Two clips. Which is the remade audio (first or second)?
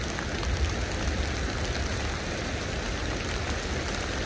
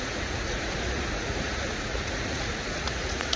second